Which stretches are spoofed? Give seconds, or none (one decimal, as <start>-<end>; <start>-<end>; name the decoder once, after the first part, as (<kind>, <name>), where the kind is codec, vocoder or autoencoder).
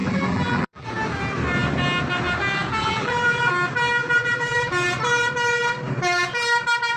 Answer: 0.0-0.9 (vocoder, BigVGAN v2); 2.8-3.5; 4.0-4.7